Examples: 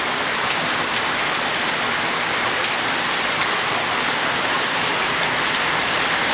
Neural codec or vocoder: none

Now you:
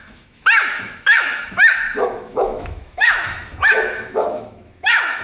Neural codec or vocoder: autoencoder, DAC-VAE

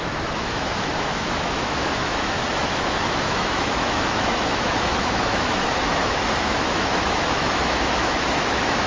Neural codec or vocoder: autoencoder, DAC-VAE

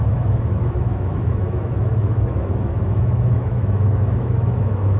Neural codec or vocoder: autoencoder, DAC-VAE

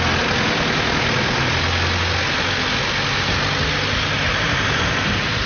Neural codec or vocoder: none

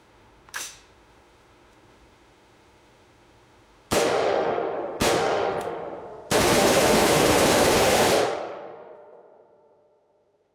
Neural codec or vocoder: autoencoder, DAC-VAE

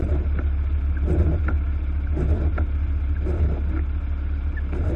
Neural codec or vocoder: none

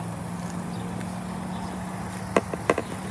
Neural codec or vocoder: none